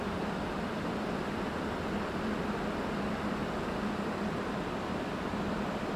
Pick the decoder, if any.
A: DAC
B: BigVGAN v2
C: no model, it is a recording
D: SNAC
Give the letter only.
B